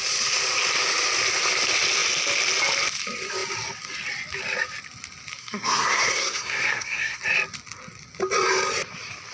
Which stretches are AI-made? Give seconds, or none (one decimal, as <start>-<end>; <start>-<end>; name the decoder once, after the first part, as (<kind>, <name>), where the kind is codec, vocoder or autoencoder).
5.4-7.2 (codec, SNAC)